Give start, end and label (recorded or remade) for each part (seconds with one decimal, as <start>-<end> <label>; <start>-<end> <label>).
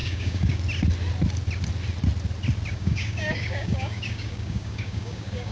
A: 0.0-0.6 remade; 0.6-2.7 recorded; 2.7-5.5 remade